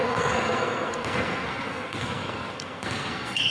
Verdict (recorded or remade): remade